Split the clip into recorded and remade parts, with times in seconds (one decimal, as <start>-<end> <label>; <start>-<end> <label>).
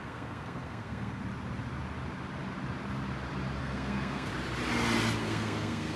0.0-1.2 remade; 1.2-3.6 recorded; 3.6-4.3 remade; 4.3-5.2 recorded; 5.2-6.0 remade